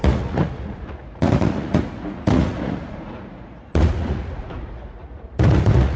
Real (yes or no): no